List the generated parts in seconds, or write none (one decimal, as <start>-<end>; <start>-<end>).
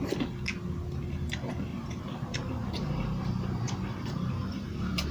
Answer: 1.7-5.1